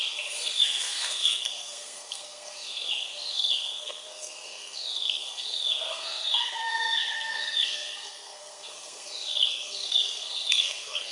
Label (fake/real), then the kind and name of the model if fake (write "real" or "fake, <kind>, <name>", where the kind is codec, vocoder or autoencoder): fake, codec, SNAC